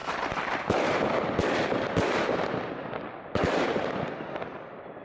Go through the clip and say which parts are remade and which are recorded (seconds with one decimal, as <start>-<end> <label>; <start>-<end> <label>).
0.0-5.0 recorded